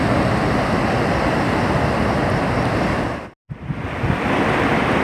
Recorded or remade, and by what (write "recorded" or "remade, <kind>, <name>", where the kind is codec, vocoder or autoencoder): recorded